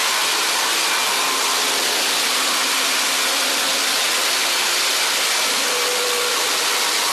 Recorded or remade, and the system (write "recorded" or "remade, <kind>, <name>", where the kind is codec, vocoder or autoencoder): recorded